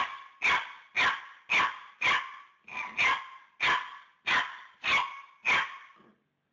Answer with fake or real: real